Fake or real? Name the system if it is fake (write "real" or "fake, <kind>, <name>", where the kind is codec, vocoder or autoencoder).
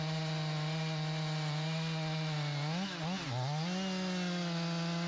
real